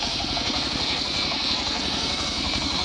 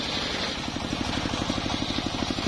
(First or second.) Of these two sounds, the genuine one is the second